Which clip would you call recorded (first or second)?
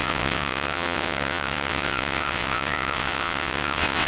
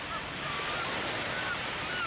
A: second